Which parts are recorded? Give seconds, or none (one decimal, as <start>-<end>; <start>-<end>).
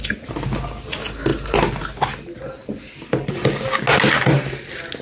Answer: 0.0-5.0